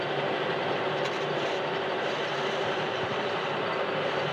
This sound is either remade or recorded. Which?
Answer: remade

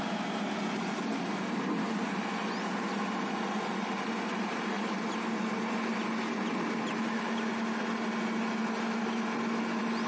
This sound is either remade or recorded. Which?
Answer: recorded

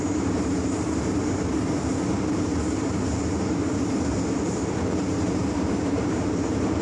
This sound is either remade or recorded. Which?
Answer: remade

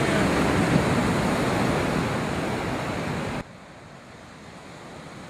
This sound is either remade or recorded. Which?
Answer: recorded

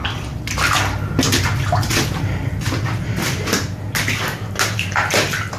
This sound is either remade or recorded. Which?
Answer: recorded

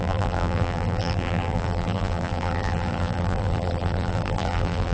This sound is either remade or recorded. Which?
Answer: remade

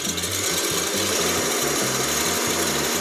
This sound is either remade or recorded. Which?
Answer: recorded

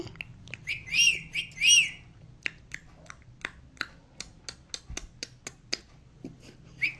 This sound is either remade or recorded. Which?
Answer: recorded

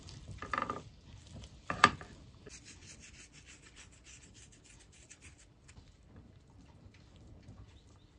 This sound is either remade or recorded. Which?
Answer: remade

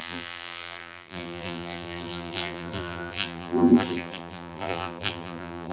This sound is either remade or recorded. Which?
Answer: remade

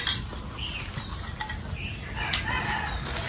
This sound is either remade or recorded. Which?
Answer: recorded